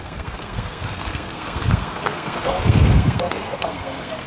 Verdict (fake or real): fake